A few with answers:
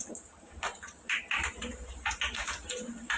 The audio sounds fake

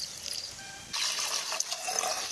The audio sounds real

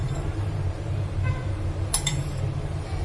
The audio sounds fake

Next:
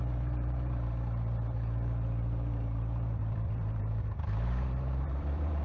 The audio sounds fake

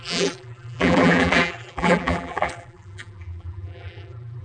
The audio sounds fake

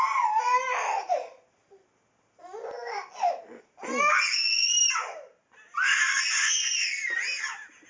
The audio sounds real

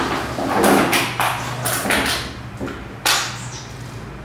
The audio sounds real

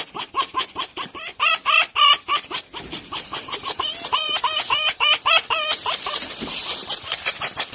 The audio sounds fake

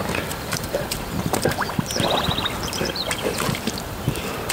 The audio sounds fake